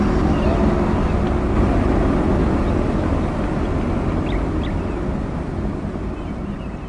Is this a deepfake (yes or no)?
no